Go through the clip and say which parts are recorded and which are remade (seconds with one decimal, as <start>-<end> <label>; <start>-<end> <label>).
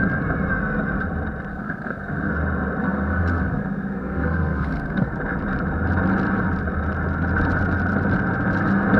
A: 0.0-1.5 recorded; 1.5-2.3 remade; 2.3-2.8 recorded; 2.8-5.1 remade; 5.1-9.0 recorded